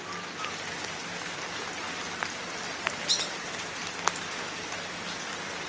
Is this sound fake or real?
real